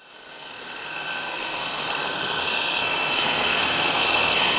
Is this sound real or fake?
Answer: fake